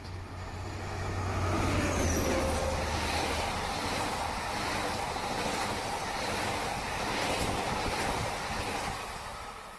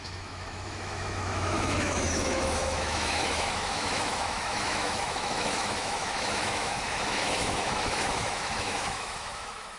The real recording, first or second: first